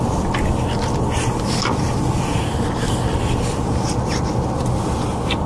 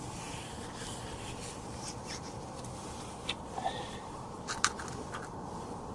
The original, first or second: first